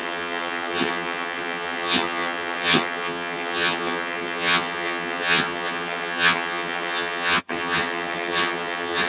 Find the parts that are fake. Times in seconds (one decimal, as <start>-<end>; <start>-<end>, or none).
0.0-9.1